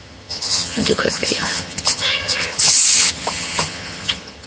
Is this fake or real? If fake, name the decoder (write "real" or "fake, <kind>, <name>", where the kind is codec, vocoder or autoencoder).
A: fake, vocoder, HiFi-GAN